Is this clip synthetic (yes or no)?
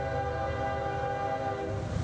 no